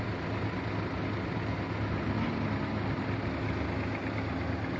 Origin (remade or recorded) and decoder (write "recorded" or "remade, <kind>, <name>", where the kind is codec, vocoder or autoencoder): recorded